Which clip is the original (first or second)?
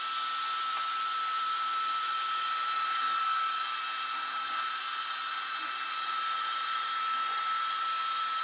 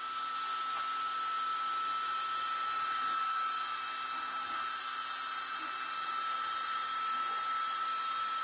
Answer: second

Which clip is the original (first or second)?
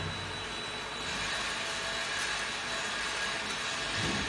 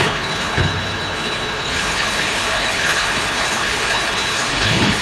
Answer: first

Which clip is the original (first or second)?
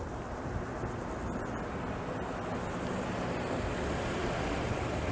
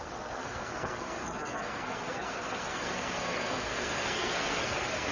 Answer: first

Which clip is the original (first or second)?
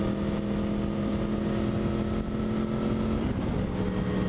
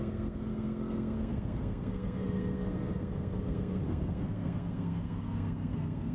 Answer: first